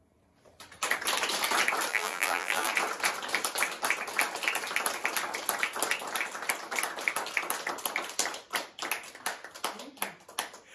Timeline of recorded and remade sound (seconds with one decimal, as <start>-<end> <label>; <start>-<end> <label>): 0.0-1.9 recorded; 1.9-2.7 remade; 2.7-10.7 recorded